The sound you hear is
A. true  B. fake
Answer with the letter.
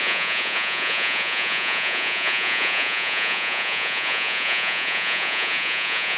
B